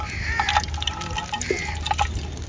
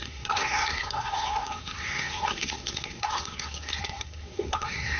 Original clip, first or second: first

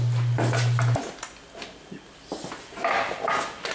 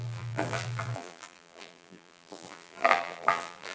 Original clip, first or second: first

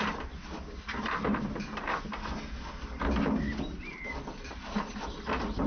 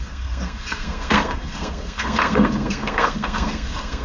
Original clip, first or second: first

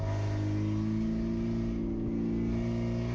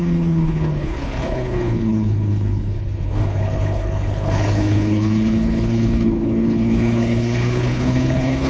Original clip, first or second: first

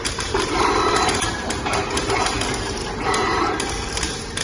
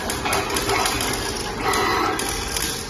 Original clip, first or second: second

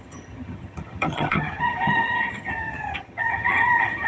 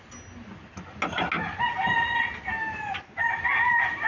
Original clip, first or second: second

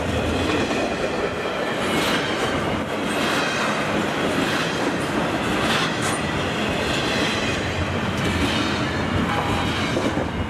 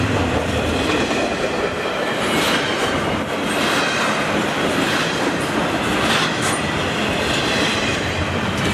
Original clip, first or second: first